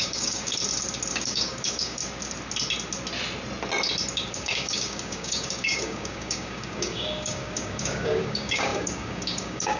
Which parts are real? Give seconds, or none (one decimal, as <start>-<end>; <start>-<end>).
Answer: 0.6-1.1; 2.0-4.3